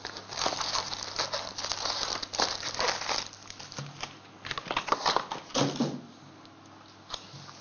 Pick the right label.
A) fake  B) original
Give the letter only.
B